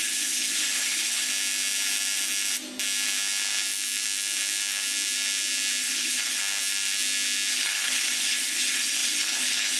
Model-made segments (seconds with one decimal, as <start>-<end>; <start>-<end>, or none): 0.0-1.3; 5.8-6.4; 7.5-9.8